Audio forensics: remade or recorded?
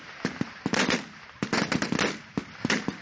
recorded